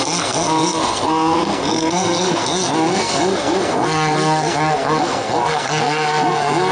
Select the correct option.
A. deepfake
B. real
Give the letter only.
A